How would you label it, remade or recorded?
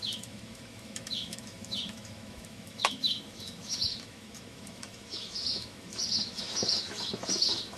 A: remade